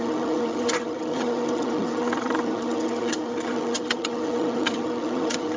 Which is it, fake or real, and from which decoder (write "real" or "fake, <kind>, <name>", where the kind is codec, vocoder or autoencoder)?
fake, vocoder, HiFi-GAN